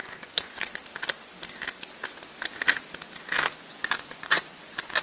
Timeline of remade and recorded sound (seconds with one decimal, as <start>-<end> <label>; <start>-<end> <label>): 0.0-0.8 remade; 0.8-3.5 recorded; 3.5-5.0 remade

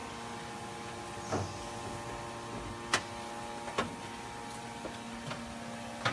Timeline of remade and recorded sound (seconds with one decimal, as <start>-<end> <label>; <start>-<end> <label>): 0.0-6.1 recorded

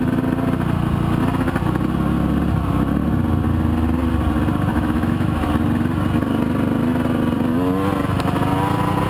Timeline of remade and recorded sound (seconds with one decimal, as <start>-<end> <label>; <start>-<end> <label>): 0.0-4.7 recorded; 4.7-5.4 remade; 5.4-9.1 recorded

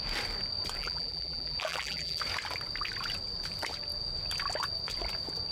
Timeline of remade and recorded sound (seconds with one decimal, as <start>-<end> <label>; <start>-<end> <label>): 0.0-0.8 recorded; 0.8-2.2 remade; 2.2-5.5 recorded

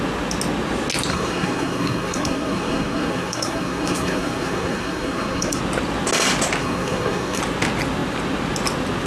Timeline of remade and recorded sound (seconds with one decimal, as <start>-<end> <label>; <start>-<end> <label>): 0.0-1.1 recorded; 1.1-5.6 remade; 5.6-6.6 recorded; 6.6-7.4 remade; 7.4-9.1 recorded

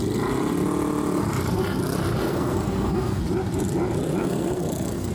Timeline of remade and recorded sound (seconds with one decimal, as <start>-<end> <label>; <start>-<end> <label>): 0.0-2.3 recorded; 2.3-3.2 remade; 3.2-4.2 recorded; 4.2-5.1 remade

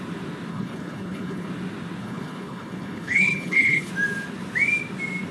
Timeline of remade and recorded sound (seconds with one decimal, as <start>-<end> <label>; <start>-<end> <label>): 0.0-0.5 recorded; 0.5-1.5 remade; 1.5-2.0 recorded; 2.0-3.9 remade; 3.9-5.3 recorded

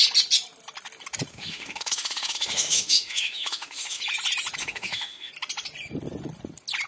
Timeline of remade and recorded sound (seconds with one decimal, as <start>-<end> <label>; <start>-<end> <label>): 0.0-1.3 recorded; 1.3-4.0 remade; 4.0-4.6 recorded; 4.6-5.3 remade; 5.3-6.9 recorded